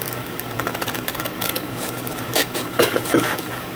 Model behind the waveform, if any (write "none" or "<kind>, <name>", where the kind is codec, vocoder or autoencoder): codec, DAC